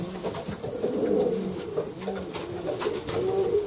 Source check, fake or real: real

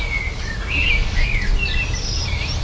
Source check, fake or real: real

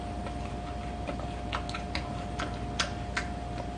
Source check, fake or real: real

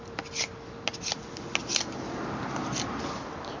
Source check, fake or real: real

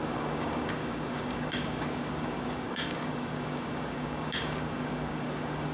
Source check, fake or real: fake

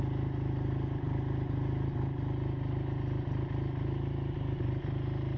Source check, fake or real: real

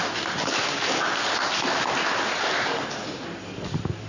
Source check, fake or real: real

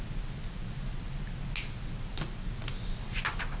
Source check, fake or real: real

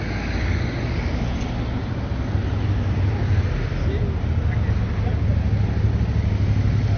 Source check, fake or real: real